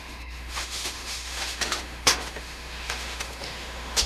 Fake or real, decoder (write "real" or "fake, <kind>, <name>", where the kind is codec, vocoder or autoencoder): fake, autoencoder, DAC-VAE